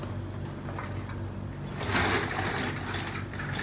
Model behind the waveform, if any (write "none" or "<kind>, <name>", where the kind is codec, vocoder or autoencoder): none